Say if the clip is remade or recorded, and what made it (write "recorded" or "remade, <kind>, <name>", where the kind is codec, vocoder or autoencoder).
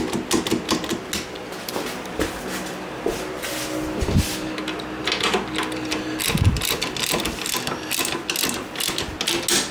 recorded